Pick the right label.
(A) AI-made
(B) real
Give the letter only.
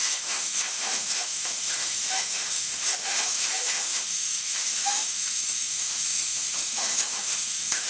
A